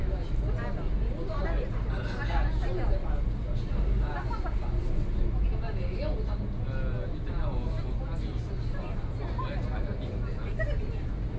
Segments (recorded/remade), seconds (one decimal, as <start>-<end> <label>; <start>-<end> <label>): 0.0-11.4 recorded